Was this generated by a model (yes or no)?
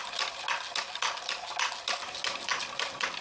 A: no